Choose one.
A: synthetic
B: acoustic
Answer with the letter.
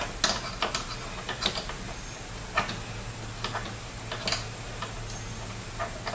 B